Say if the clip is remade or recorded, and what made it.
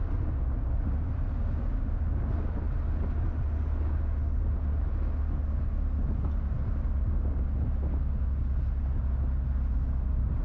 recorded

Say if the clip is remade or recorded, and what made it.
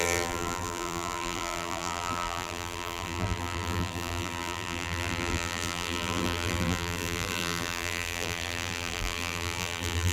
remade, vocoder, BigVGAN v2